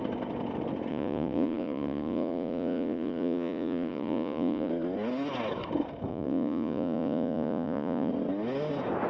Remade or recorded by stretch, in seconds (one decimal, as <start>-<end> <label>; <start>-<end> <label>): 0.0-0.9 recorded; 0.9-4.7 remade; 4.7-6.1 recorded; 6.1-8.1 remade; 8.1-9.1 recorded